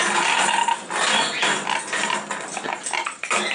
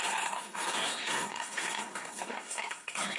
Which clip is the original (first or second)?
first